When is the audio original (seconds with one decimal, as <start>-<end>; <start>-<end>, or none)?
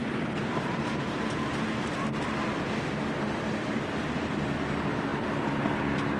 1.5-6.2